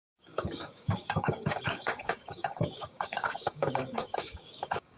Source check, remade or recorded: remade